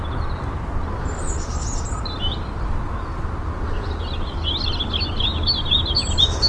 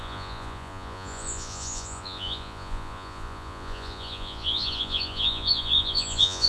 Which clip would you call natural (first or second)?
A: first